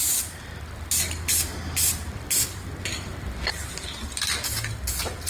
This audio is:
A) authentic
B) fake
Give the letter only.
A